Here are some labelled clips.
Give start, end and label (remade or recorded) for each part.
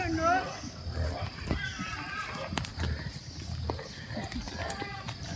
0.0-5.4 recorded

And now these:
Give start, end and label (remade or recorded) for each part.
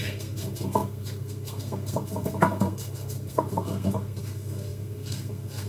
0.0-5.7 remade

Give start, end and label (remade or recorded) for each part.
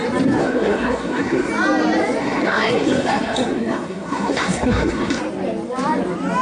0.0-0.4 recorded; 0.4-1.5 remade; 1.5-2.2 recorded; 2.2-5.2 remade; 5.2-6.4 recorded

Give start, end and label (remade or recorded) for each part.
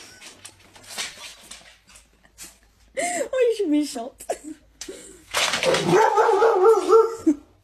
0.0-4.5 recorded; 4.5-5.5 remade; 5.5-7.6 recorded